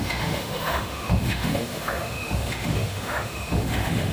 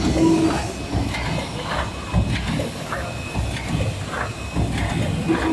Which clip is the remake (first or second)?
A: first